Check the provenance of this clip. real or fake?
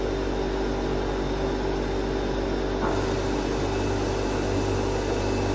real